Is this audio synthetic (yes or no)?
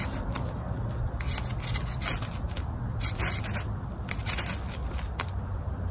no